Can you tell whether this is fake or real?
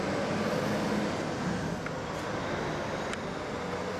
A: real